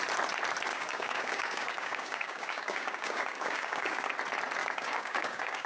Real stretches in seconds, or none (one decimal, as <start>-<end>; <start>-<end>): 0.0-0.7; 4.1-4.6